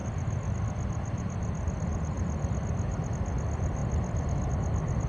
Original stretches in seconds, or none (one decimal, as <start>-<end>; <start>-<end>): 0.0-5.1